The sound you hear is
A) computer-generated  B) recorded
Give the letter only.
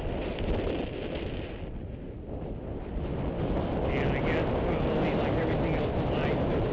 B